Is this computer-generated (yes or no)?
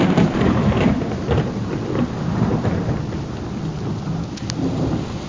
no